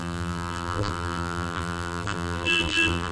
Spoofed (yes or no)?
yes